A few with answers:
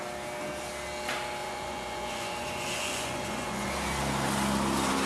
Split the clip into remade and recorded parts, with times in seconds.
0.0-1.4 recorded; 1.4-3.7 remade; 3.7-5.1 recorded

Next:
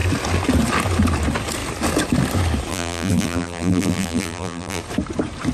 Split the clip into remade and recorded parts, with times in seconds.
0.0-2.7 recorded; 2.7-4.8 remade; 4.8-5.5 recorded

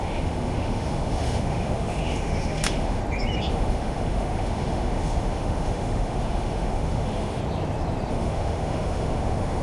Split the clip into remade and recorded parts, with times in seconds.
0.0-3.0 remade; 3.0-3.5 recorded; 3.5-7.4 remade; 7.4-8.1 recorded; 8.1-9.6 remade

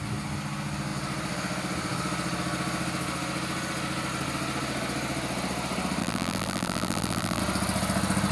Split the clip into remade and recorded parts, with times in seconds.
0.0-6.0 recorded; 6.0-7.4 remade; 7.4-8.3 recorded